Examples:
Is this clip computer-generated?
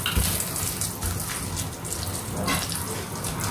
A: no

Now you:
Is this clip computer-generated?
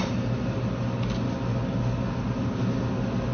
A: no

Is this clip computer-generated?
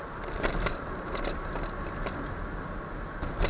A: no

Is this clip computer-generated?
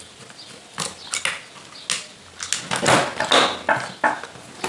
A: no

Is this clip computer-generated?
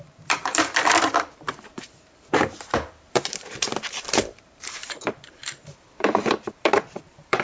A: yes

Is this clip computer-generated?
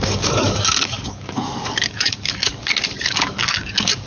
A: yes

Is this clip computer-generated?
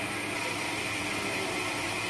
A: no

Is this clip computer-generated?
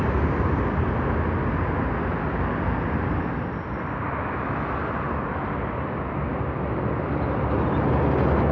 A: no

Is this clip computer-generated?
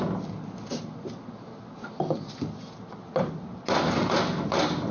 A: no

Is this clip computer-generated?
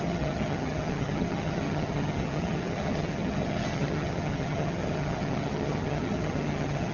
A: yes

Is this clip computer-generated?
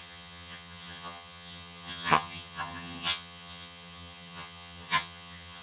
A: yes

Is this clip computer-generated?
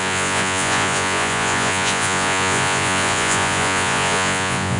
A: yes